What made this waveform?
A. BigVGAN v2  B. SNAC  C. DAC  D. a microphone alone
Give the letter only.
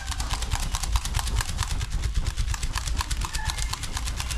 A